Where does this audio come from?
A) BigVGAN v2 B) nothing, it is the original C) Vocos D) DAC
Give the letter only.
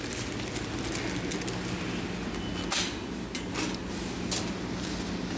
B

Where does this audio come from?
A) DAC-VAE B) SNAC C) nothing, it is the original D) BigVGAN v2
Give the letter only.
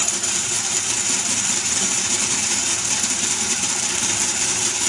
D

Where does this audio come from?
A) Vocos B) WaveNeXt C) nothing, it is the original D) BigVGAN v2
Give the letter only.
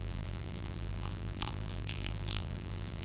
D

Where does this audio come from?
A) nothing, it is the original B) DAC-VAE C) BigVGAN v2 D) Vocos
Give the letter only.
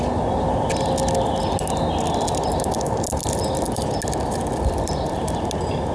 A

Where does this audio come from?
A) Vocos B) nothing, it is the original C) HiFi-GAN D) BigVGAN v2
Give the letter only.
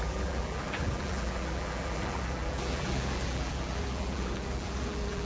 D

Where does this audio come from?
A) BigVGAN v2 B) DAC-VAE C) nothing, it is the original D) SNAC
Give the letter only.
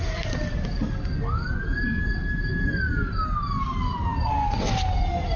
C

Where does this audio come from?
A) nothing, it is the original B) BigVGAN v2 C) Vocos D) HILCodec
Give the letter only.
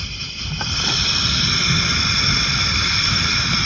B